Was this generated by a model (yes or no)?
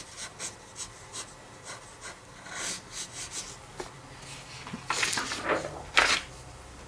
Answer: no